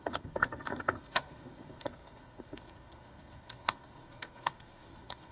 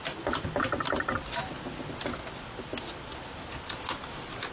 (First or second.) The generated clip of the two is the first